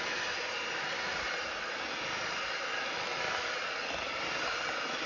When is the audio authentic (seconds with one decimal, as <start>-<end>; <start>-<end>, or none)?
0.0-0.4; 0.9-5.1